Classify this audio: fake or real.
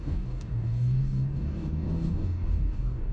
fake